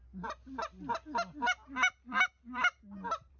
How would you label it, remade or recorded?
recorded